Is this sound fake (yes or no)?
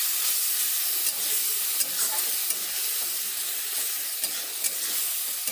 no